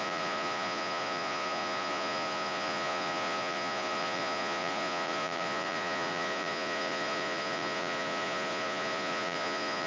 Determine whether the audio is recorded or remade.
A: remade